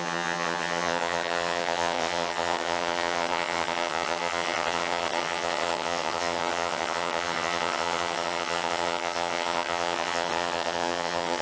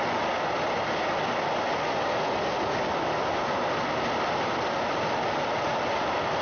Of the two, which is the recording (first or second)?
second